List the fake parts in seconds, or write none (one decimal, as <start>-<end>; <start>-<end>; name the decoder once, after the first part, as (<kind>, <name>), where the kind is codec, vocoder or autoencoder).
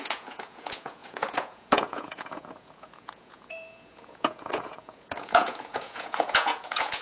0.0-7.0 (vocoder, Vocos)